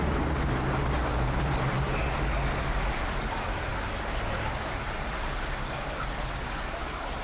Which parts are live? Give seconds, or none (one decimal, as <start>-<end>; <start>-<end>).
0.0-7.2